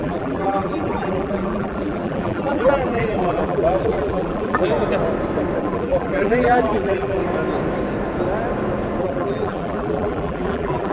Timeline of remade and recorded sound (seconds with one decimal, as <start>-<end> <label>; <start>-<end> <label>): 0.0-4.7 remade; 4.7-5.6 recorded; 5.6-7.2 remade; 7.2-9.0 recorded; 9.0-10.9 remade